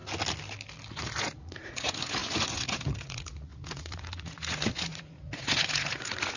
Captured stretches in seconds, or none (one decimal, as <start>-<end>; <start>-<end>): 0.0-1.2